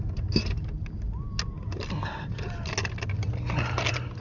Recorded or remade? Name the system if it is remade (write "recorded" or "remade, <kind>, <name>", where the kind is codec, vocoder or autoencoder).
recorded